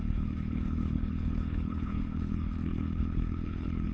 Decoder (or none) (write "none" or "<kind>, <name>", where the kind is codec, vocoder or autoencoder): codec, HILCodec